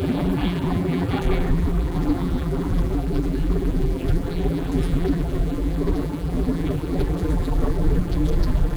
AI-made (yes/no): yes